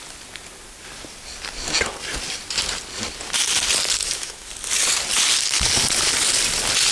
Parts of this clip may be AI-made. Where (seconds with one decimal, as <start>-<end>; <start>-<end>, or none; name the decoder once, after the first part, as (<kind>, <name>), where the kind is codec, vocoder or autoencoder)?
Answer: 4.0-4.5 (autoencoder, DAC-VAE)